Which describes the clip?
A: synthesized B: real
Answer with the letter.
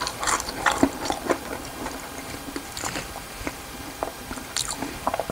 A